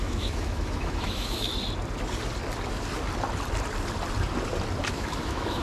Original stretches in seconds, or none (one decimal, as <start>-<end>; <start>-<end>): 1.5-4.9